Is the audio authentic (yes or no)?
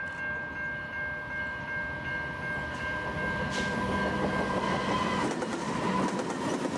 yes